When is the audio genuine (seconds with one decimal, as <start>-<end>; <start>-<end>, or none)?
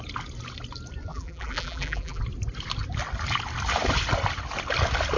0.0-1.1; 2.2-5.2